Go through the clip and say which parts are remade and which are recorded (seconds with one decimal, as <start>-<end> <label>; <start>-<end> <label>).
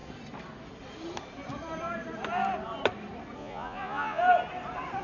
0.0-3.4 recorded; 3.4-4.2 remade; 4.2-5.0 recorded